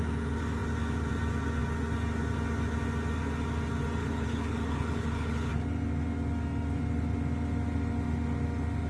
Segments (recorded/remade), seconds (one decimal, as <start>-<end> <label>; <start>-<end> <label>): 0.0-4.0 recorded; 4.0-5.5 remade; 5.5-8.9 recorded